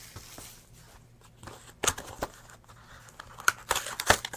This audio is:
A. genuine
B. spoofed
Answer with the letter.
A